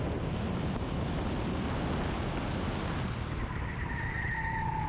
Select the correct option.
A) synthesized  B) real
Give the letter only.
B